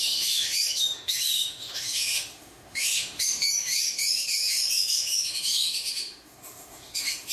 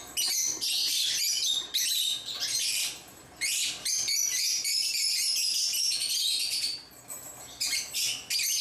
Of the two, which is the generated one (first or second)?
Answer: first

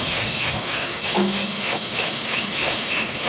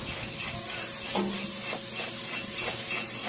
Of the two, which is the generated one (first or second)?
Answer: first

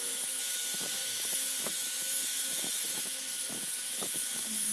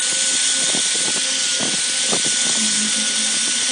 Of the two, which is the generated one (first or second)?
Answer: first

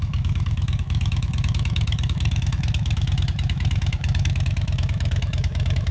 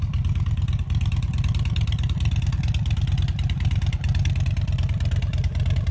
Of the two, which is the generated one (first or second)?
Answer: first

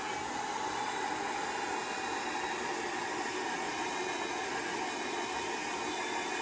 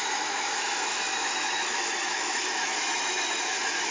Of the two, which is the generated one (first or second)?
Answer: second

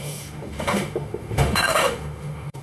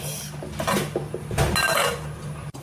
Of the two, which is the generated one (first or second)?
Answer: first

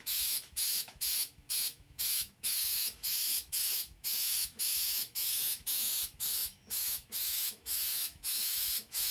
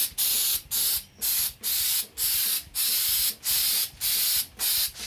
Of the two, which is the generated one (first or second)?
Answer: first